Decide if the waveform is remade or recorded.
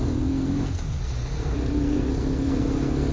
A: remade